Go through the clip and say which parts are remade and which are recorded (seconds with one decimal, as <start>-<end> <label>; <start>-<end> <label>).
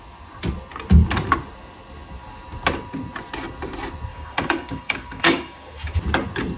0.0-4.1 recorded; 4.1-6.0 remade; 6.0-6.6 recorded